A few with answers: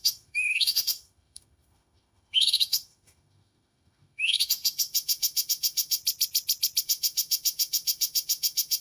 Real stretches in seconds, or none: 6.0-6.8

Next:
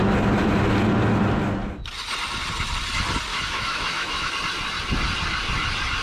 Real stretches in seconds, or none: 0.0-3.3; 4.3-6.0

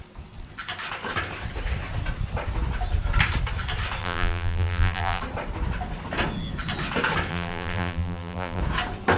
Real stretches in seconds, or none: 0.0-4.0; 5.2-7.3; 8.6-9.2

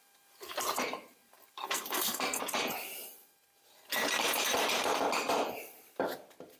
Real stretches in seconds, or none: 0.0-1.6; 2.4-6.6

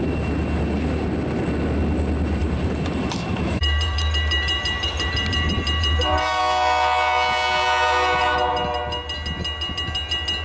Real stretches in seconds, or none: 0.0-2.4; 6.4-10.4

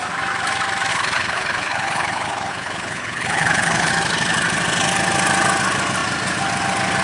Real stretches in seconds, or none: 0.0-0.9; 3.9-7.0

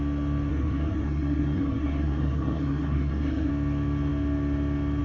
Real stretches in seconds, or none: 0.0-0.5; 3.5-5.0